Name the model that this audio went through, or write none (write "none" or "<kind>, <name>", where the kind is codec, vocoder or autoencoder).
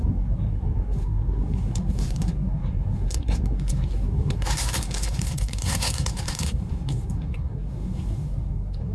codec, SNAC